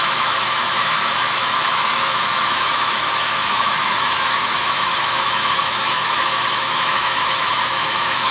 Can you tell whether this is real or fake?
fake